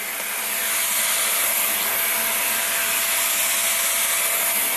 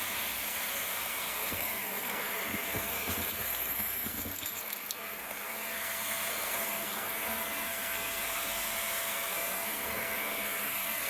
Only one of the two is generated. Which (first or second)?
second